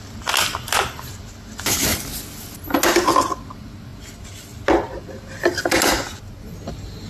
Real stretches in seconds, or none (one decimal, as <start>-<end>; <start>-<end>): 0.0-7.1